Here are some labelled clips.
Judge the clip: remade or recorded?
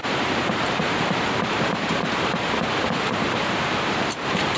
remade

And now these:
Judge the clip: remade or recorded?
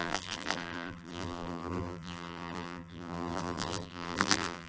remade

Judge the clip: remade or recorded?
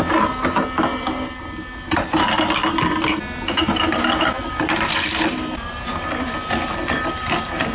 recorded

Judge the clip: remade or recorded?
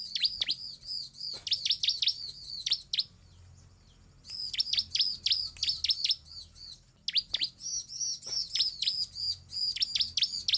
recorded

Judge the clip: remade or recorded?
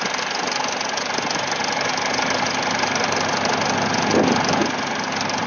recorded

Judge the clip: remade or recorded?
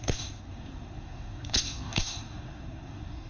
remade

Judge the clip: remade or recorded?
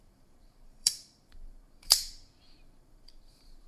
remade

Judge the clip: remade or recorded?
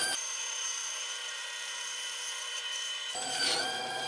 remade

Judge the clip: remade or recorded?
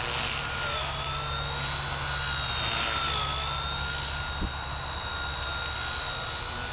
recorded